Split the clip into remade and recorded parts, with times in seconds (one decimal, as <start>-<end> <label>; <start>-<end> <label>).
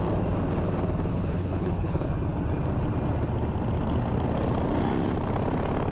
0.0-1.1 recorded; 1.1-2.1 remade; 2.1-5.9 recorded